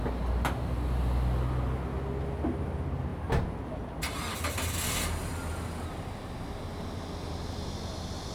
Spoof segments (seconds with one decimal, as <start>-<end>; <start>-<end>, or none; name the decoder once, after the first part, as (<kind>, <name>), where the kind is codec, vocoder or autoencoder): none